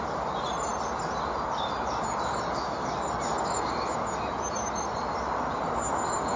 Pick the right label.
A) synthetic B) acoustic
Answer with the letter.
B